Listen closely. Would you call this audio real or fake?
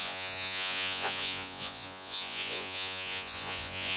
fake